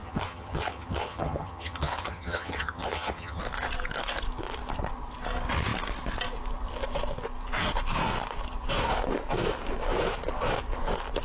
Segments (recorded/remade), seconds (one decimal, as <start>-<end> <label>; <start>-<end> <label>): 0.0-3.4 remade; 3.4-11.2 recorded